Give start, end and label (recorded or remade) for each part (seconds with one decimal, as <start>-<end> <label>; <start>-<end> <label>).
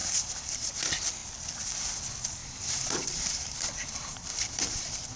0.0-0.7 remade; 0.7-2.4 recorded; 2.4-5.2 remade